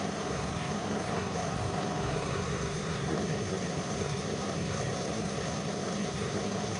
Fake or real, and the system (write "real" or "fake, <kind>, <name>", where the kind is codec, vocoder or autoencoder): fake, codec, SNAC